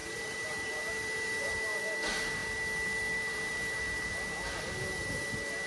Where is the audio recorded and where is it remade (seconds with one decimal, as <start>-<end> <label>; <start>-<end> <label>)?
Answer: 0.0-1.8 remade; 1.8-2.4 recorded; 2.4-4.1 remade; 4.1-5.7 recorded